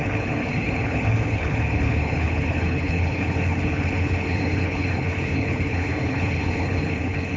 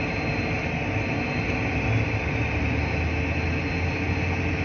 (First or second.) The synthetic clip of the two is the first